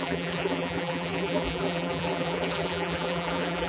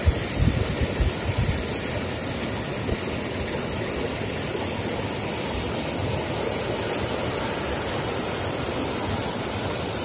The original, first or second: second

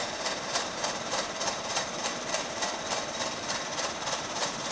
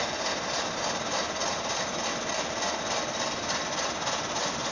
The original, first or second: second